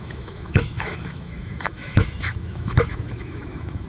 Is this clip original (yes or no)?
no